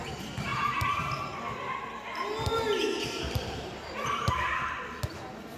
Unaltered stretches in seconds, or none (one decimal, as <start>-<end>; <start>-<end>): 0.0-0.5; 1.0-2.8; 4.8-5.6